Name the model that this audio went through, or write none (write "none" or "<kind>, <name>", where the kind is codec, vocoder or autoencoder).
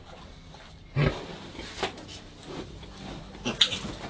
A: none